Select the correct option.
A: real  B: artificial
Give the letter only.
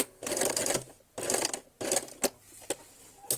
A